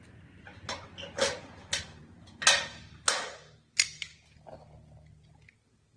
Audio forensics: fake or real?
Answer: real